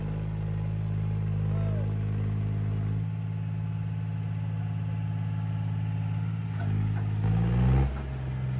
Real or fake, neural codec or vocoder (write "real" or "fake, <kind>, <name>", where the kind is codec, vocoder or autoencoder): real